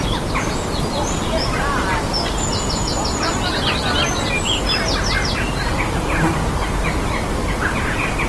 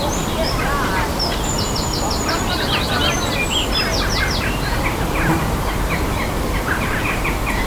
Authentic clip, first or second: first